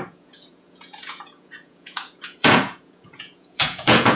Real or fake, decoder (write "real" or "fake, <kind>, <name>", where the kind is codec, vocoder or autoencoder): fake, vocoder, Vocos